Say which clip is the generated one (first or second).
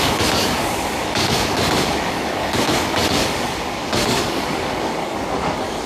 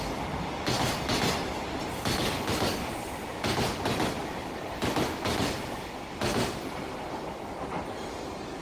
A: first